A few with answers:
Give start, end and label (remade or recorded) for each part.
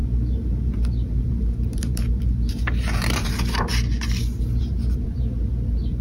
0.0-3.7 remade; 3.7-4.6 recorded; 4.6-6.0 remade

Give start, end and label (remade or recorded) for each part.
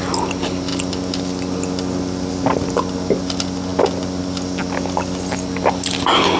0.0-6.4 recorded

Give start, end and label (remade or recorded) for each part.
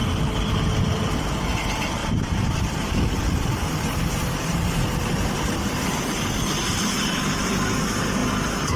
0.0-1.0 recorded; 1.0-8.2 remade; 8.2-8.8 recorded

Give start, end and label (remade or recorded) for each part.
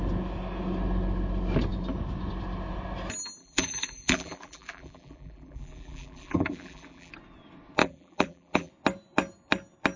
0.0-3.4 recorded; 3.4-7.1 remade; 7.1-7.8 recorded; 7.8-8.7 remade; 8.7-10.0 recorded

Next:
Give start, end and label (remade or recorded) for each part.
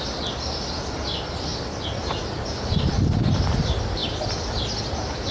0.0-5.3 recorded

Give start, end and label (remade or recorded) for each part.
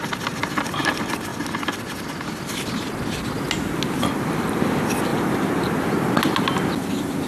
0.0-5.1 recorded; 5.1-6.1 remade; 6.1-7.3 recorded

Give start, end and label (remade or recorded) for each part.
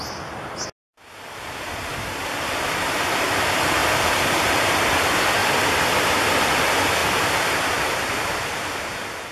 0.0-3.8 recorded; 3.8-4.8 remade; 4.8-5.4 recorded; 5.4-6.2 remade; 6.2-7.0 recorded; 7.0-9.3 remade